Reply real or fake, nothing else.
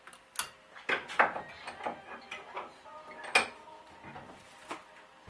real